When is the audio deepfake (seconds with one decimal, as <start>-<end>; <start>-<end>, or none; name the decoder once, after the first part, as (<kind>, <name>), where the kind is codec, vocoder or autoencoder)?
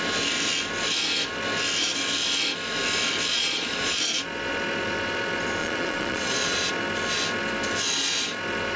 3.3-4.0 (vocoder, Vocos); 5.6-6.7